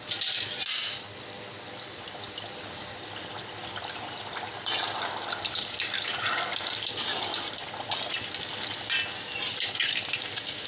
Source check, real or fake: real